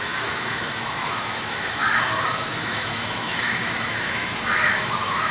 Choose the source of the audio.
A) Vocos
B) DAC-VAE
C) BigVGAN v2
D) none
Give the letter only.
B